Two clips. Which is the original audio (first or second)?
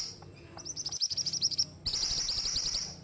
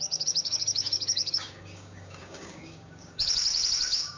first